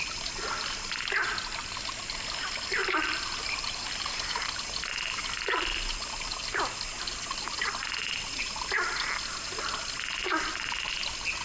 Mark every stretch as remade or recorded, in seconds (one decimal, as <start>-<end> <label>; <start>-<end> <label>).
0.0-2.8 recorded; 2.8-4.9 remade; 4.9-11.4 recorded